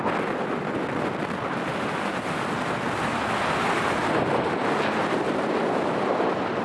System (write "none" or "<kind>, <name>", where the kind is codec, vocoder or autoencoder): none